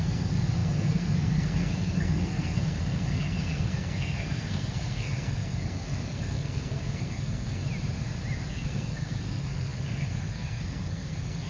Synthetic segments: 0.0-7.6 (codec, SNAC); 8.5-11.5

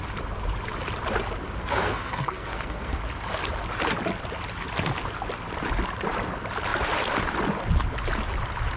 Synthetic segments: 1.6-3.0 (codec, SNAC)

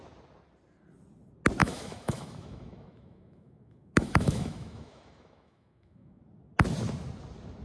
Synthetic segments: 1.6-6.2 (autoencoder, DAC-VAE)